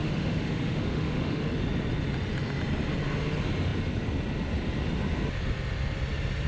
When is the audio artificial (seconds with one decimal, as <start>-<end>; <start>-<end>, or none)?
0.0-1.4